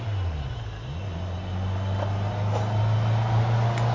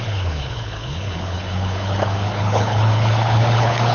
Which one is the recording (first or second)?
first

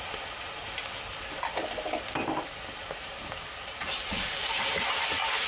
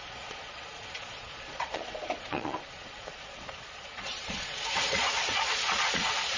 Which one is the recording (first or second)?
first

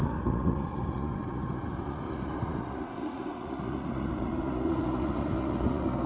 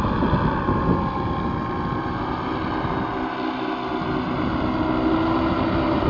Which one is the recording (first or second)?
second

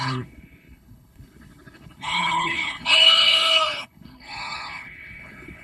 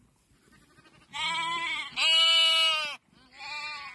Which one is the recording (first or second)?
second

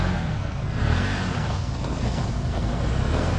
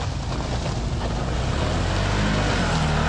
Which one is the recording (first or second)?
second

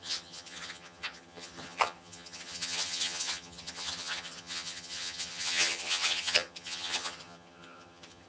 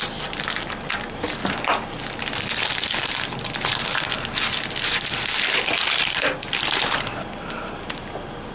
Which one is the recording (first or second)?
second